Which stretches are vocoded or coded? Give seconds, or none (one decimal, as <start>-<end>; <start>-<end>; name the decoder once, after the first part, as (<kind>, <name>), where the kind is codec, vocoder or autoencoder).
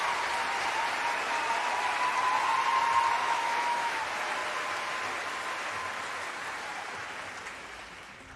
3.2-4.0 (autoencoder, DAC-VAE)